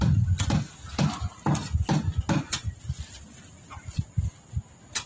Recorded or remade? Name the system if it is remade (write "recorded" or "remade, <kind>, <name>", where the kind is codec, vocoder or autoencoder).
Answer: recorded